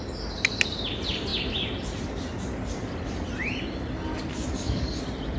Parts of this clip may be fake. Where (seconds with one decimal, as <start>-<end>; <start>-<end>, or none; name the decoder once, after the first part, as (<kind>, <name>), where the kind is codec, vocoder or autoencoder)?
4.3-5.0 (codec, DAC)